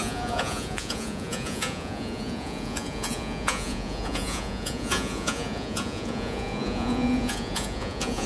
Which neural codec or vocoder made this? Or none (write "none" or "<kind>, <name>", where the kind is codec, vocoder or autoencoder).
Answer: vocoder, Vocos